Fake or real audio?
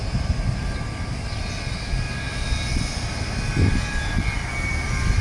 real